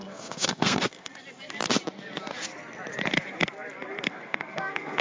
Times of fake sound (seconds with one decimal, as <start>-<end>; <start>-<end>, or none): 0.0-1.1; 4.1-5.0